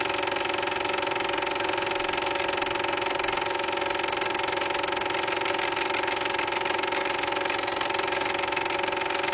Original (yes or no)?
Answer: yes